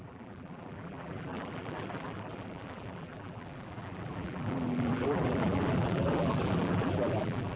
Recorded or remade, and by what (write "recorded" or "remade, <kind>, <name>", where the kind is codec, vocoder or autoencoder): remade, vocoder, BigVGAN v2